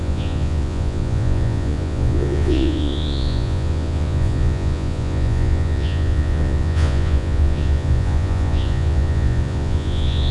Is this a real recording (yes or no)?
no